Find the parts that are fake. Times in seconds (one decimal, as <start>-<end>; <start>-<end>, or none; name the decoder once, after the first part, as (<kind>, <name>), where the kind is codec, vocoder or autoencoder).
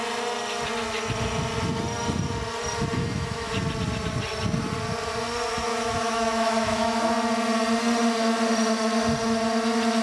3.0-3.5 (autoencoder, DAC-VAE); 5.7-7.1